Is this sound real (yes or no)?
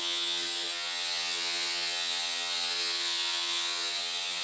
no